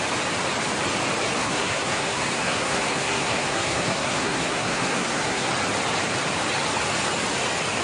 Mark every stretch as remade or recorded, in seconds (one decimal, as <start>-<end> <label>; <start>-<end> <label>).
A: 0.0-1.4 recorded; 1.4-5.5 remade; 5.5-7.8 recorded